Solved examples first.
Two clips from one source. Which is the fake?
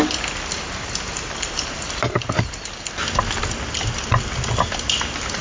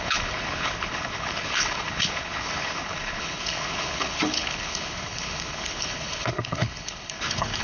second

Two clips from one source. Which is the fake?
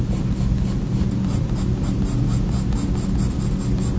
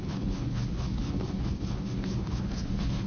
second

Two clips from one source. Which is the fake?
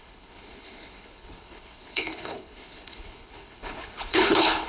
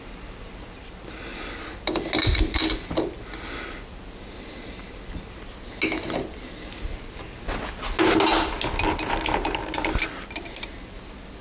first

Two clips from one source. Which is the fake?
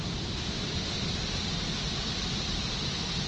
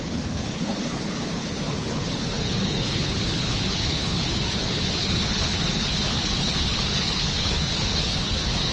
second